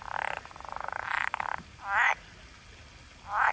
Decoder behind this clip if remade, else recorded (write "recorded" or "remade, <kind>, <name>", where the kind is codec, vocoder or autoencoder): recorded